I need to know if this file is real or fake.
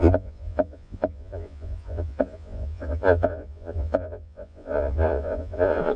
fake